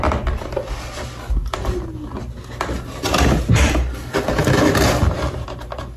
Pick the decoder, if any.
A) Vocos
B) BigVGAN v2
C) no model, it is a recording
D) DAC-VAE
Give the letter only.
C